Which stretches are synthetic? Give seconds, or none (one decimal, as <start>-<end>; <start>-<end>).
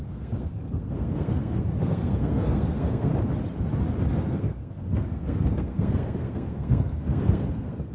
0.0-3.1; 4.1-7.9